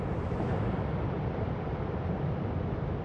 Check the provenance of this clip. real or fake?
real